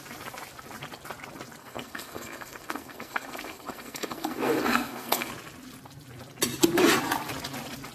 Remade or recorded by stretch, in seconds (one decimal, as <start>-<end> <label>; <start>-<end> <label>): 0.0-1.6 recorded; 1.6-5.3 remade; 5.3-7.9 recorded